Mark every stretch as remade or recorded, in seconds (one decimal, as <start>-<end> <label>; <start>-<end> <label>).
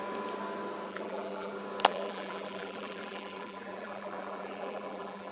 0.0-0.9 recorded; 0.9-1.5 remade; 1.5-1.9 recorded; 1.9-5.3 remade